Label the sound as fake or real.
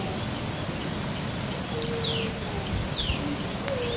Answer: real